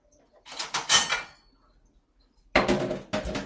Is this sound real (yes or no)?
yes